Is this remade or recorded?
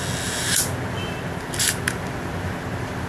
recorded